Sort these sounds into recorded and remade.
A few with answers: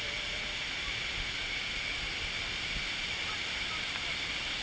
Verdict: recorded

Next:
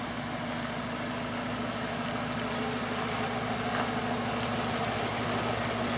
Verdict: recorded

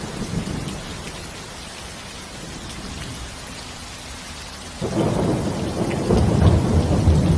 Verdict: recorded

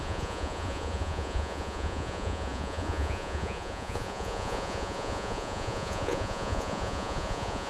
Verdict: remade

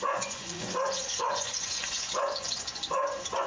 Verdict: remade